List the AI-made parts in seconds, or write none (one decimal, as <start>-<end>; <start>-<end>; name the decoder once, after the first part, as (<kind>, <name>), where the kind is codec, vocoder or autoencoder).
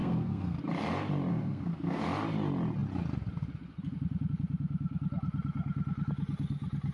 0.0-0.6 (codec, SNAC); 1.3-2.0